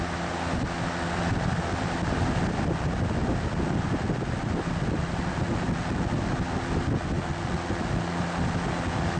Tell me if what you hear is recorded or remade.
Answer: recorded